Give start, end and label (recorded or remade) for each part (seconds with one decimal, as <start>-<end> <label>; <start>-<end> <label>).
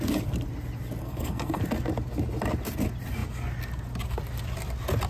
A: 0.0-1.0 recorded; 1.0-1.6 remade; 1.6-5.1 recorded